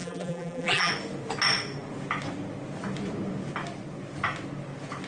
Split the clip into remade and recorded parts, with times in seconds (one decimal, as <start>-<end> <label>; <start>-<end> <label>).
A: 0.0-0.9 remade; 0.9-5.1 recorded